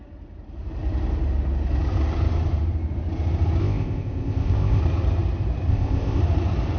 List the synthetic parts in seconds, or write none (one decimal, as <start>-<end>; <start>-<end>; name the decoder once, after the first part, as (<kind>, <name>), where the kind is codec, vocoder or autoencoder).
3.6-4.8 (codec, ZipCodec); 5.7-6.2